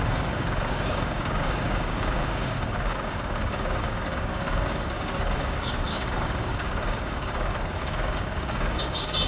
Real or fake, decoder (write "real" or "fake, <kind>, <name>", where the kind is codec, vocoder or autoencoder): fake, codec, DAC